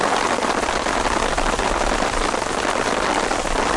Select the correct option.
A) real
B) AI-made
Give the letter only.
A